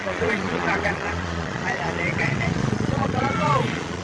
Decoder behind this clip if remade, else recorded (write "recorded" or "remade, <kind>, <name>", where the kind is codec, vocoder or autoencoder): remade, vocoder, Vocos